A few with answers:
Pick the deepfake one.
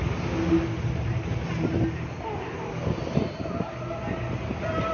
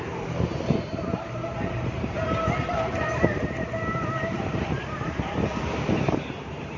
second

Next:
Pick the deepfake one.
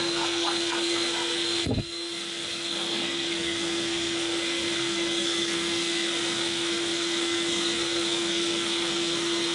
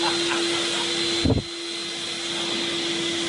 first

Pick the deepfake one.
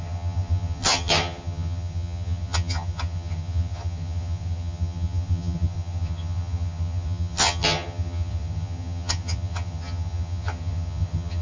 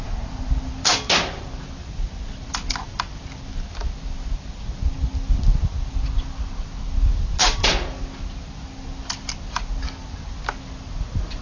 first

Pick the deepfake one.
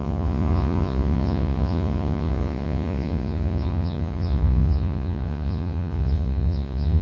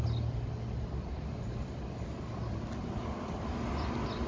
first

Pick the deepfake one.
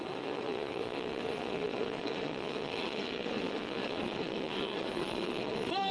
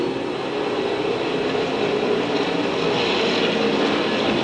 first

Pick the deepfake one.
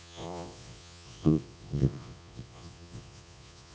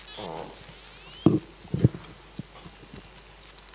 first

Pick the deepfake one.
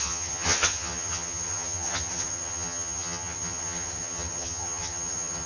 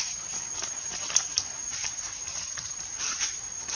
first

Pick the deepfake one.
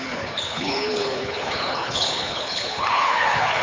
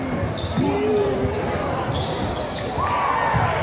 first